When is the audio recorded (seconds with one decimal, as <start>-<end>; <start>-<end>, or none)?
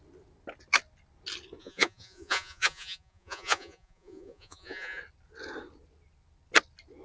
0.0-1.6; 5.0-7.0